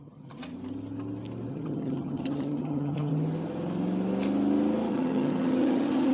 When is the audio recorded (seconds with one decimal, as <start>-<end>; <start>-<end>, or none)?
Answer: 0.4-1.5; 3.1-4.9